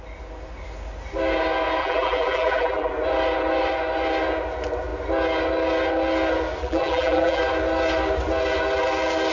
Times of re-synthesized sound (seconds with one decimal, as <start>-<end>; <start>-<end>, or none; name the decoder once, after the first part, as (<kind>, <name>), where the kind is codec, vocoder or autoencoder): 1.8-2.9 (vocoder, BigVGAN v2); 6.6-7.4